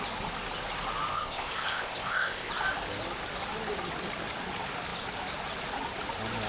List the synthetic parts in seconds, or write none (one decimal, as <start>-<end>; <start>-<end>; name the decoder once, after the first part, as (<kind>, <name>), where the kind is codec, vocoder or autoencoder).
1.1-2.5 (codec, ZipCodec)